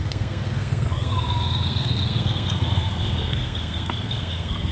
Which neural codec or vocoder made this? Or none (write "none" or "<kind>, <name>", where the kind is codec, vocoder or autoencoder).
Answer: codec, SNAC